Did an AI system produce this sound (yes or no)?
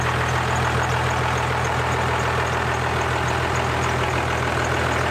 no